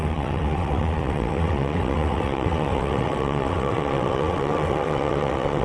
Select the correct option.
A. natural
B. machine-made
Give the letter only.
B